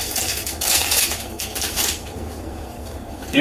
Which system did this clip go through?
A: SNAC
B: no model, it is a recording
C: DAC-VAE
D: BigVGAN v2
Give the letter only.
A